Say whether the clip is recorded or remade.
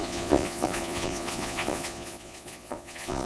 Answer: remade